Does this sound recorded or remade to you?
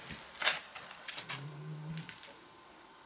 recorded